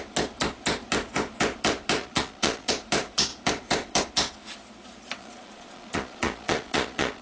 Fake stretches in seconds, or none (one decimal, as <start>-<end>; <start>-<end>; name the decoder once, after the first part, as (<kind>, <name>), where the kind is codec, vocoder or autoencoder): 2.0-2.7 (vocoder, Vocos); 5.2-7.2